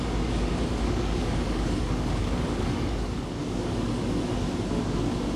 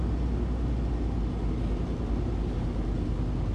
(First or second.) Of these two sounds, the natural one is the second